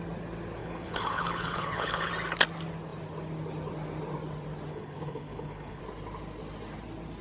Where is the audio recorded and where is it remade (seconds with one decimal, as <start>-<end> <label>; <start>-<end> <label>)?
0.0-0.6 recorded; 0.6-2.1 remade; 2.1-4.7 recorded; 4.7-5.8 remade; 5.8-7.2 recorded